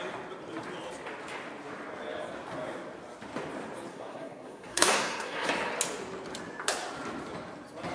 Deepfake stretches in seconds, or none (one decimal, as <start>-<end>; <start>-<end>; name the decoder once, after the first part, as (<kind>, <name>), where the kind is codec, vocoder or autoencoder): 3.9-5.5 (codec, SNAC)

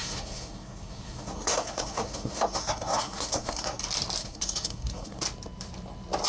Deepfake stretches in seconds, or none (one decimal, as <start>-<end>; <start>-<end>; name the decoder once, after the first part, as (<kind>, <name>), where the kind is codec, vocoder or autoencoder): 0.0-3.8 (codec, SNAC); 4.2-5.2

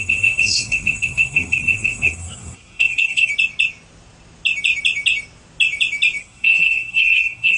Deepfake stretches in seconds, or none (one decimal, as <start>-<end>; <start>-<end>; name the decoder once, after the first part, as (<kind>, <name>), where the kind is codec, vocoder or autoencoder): 0.0-3.3 (codec, SNAC); 6.2-7.6

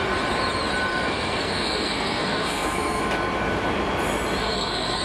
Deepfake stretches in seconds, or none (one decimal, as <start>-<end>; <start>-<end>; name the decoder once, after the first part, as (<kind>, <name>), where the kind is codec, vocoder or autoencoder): 0.9-3.0 (codec, SNAC); 4.4-5.0

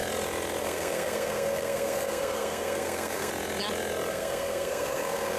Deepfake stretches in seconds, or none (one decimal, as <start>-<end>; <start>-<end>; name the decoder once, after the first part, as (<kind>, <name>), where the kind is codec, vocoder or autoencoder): 0.6-3.3 (codec, SNAC); 4.1-5.4

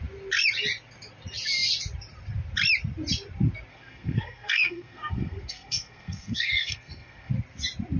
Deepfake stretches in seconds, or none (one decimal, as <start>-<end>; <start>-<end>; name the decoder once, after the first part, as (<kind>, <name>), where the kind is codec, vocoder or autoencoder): 3.7-7.3 (codec, SNAC)

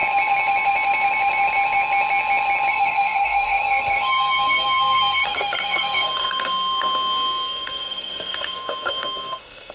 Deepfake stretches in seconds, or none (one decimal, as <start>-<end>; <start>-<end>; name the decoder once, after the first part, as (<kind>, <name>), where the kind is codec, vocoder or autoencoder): 2.7-9.7 (codec, SNAC)

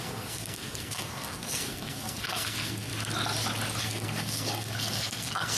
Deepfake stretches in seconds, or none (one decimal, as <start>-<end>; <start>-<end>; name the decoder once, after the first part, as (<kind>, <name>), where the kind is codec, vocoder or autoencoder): 0.0-2.9 (codec, SNAC); 3.8-5.6